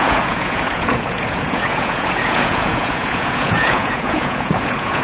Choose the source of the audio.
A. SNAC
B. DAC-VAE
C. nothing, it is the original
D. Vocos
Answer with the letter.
D